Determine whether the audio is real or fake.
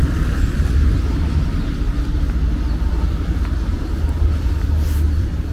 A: real